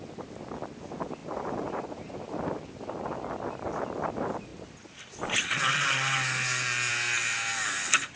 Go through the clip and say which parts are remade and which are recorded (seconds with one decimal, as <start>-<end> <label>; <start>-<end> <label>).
0.0-1.2 recorded; 1.2-2.4 remade; 2.4-8.2 recorded